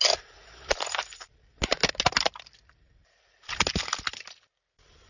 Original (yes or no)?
yes